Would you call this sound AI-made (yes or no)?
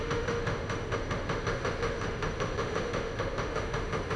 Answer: yes